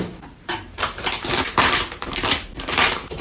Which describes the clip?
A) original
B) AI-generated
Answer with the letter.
B